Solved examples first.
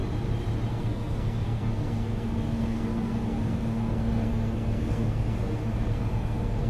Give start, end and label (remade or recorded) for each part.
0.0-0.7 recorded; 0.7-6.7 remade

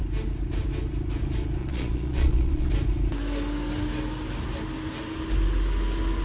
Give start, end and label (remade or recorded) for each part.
0.0-1.6 recorded; 1.6-2.7 remade; 2.7-6.2 recorded

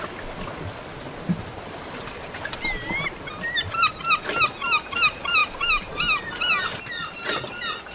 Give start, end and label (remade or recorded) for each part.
0.0-7.9 recorded

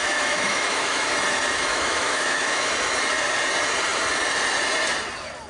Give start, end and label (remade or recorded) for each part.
0.0-1.1 remade; 1.1-1.7 recorded; 1.7-2.7 remade; 2.7-5.5 recorded

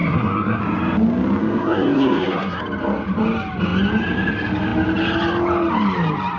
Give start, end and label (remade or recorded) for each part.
0.0-0.6 remade; 0.6-1.4 recorded; 1.4-2.6 remade; 2.6-6.4 recorded